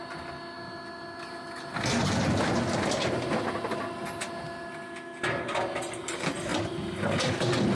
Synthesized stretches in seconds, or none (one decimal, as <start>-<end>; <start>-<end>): none